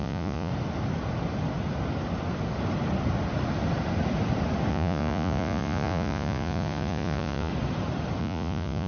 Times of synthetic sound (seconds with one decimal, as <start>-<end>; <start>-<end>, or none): 0.0-0.5; 4.7-7.5; 8.2-8.9